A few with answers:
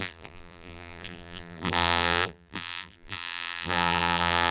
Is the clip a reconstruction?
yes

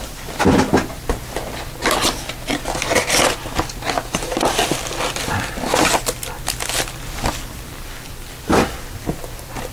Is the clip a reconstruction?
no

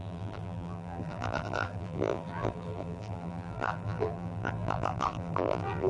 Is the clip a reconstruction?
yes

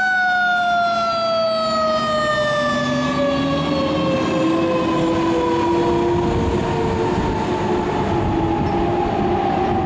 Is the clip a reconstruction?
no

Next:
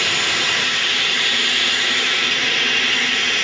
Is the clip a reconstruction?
yes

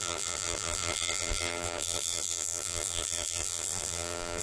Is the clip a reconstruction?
yes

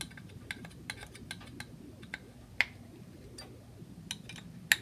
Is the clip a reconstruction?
no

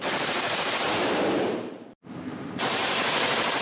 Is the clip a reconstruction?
yes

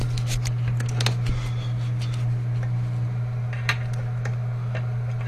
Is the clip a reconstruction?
no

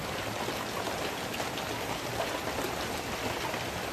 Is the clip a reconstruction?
no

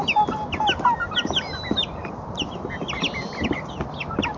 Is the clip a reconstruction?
no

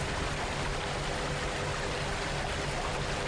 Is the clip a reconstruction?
no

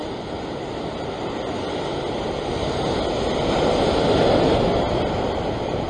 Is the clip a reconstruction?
no